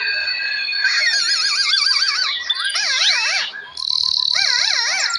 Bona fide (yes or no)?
yes